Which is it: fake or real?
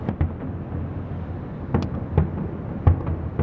real